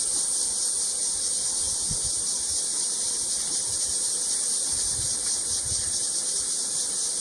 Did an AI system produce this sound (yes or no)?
yes